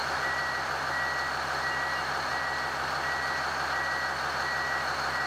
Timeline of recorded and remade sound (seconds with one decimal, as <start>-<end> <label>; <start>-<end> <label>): 0.0-0.9 remade; 0.9-5.3 recorded